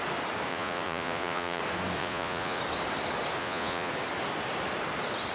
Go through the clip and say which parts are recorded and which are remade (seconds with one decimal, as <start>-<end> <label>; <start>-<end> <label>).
0.0-0.5 recorded; 0.5-1.6 remade; 1.6-2.0 recorded; 2.0-2.6 remade; 2.6-3.4 recorded; 3.4-3.9 remade; 3.9-5.3 recorded